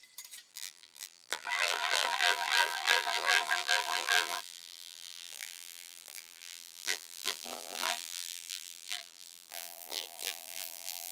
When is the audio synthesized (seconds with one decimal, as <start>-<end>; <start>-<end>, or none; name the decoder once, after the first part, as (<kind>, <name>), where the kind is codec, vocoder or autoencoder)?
0.5-11.1 (vocoder, BigVGAN v2)